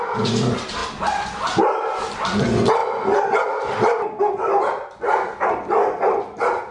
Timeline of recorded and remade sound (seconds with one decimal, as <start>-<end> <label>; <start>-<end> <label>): 0.0-2.8 recorded; 2.8-4.2 remade; 4.2-5.1 recorded; 5.1-6.7 remade